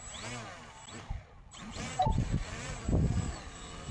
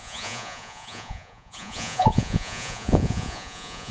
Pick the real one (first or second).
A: first